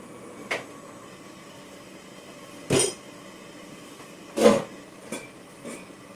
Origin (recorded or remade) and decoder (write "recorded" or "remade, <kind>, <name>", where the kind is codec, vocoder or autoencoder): recorded